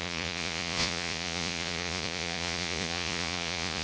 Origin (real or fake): fake